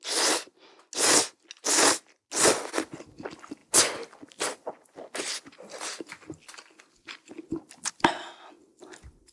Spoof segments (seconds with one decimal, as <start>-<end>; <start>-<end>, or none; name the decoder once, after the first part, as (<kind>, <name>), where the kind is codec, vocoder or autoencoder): none